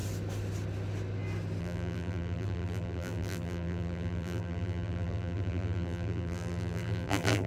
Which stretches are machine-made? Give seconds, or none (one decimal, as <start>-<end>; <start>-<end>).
1.6-7.5